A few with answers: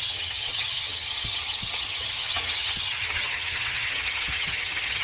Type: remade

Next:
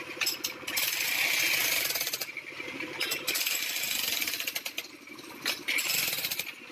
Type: recorded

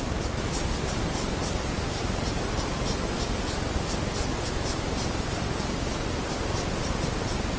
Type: recorded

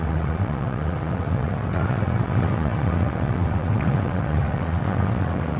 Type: remade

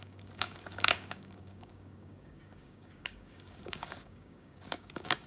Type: remade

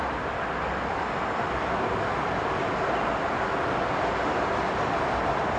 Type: recorded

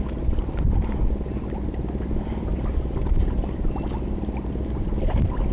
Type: recorded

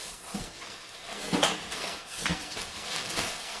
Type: remade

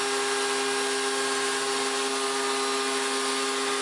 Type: recorded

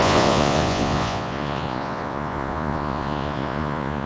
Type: remade